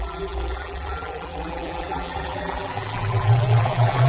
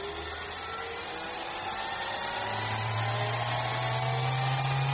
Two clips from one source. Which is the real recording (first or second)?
second